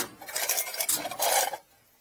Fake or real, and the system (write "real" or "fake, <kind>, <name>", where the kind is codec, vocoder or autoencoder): real